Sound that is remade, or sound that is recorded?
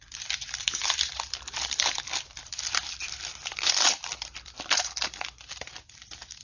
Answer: remade